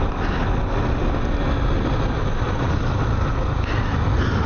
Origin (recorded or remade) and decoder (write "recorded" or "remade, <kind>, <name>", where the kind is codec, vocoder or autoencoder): recorded